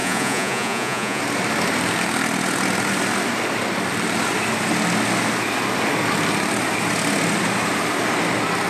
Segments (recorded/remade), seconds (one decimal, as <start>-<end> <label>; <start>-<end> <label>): 0.0-1.2 remade; 1.2-8.7 recorded